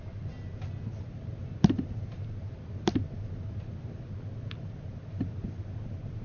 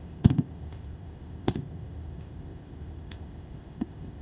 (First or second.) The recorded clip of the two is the first